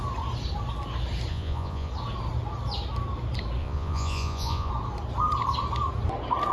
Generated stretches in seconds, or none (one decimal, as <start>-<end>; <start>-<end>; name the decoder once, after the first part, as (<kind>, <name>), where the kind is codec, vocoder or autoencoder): 1.3-1.9 (vocoder, Vocos); 3.6-4.7